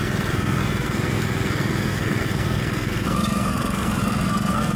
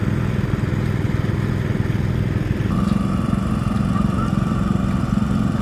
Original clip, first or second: second